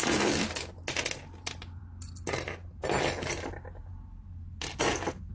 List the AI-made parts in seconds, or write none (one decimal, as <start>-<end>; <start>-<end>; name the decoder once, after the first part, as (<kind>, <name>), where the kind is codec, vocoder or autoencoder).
none